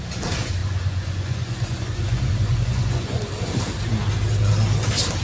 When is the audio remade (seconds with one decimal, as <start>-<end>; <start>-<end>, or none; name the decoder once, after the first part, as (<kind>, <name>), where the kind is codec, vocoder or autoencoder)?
0.6-3.2 (vocoder, Vocos)